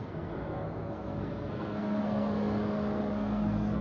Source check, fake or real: fake